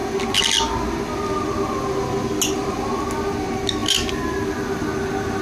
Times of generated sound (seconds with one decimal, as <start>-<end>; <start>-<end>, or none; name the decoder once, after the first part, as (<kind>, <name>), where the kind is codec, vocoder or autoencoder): none